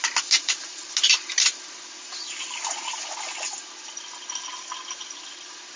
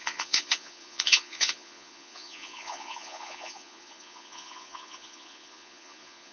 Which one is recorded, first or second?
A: first